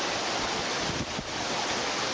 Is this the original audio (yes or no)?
yes